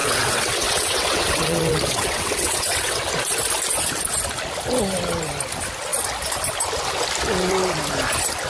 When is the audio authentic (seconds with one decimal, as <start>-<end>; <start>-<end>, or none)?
3.1-8.5